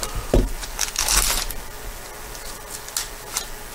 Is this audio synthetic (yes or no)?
no